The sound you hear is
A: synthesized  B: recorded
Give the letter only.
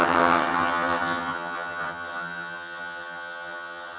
A